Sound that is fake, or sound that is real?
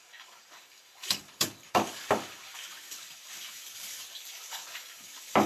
fake